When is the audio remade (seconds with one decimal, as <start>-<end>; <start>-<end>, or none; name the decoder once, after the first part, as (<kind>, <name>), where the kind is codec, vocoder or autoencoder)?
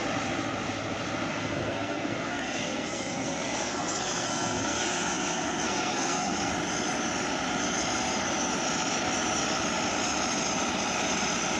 1.3-6.5 (codec, SNAC)